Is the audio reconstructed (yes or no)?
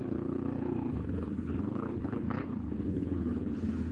yes